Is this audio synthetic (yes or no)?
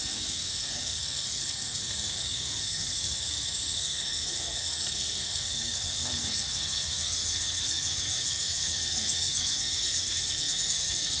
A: yes